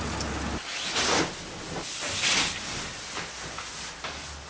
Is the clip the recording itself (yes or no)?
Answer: yes